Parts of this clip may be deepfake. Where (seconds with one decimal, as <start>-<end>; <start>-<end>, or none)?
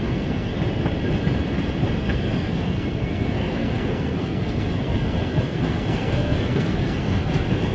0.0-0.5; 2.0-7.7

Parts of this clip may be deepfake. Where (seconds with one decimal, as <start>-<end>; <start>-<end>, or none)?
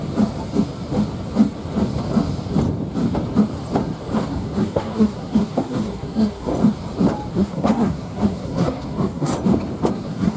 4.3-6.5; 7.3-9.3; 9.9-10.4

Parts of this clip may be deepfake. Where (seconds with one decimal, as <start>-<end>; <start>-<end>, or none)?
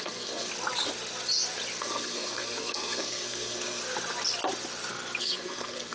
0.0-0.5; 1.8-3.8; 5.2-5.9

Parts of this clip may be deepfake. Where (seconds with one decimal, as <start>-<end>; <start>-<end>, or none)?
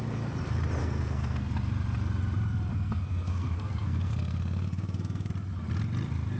0.8-1.5; 2.7-5.3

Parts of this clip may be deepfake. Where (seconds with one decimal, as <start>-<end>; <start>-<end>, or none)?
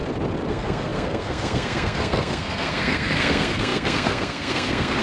0.5-5.0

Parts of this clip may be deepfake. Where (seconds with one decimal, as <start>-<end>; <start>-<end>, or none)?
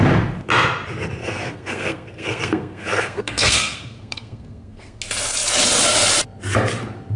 1.2-5.0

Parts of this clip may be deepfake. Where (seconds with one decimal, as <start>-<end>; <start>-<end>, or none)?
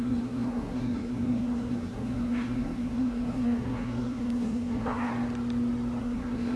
0.0-5.1; 6.0-6.6